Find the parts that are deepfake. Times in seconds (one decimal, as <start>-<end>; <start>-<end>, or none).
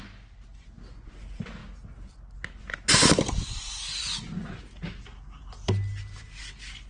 none